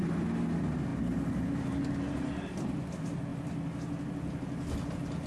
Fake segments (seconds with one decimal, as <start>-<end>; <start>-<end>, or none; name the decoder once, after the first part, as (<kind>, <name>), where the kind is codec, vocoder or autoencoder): none